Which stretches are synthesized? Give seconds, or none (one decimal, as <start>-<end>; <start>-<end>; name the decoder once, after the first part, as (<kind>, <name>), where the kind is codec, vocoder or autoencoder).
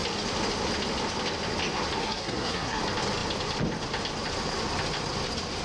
2.0-2.8 (codec, SNAC)